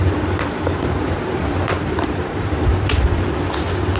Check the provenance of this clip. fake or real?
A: fake